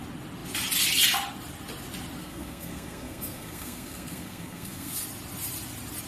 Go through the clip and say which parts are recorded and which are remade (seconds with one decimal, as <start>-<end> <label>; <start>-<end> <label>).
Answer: 0.0-2.2 recorded; 2.2-4.9 remade; 4.9-6.1 recorded